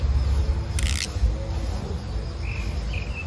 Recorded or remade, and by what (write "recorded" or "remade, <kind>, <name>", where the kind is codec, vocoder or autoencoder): recorded